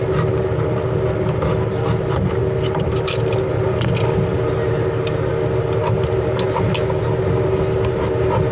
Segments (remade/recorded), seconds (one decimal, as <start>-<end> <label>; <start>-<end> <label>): 0.0-8.5 recorded